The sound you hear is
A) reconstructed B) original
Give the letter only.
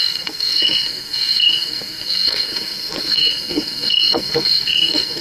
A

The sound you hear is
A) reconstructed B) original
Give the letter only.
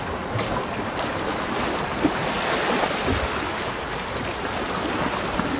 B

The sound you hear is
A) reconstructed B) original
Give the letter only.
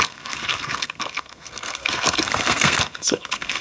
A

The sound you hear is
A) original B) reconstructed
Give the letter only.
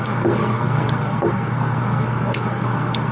B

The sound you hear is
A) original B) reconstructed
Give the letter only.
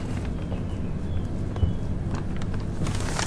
A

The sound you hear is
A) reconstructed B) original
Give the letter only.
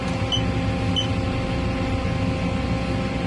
B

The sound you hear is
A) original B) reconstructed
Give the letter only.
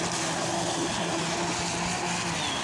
A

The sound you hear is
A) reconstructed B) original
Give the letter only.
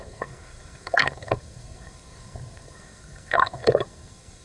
A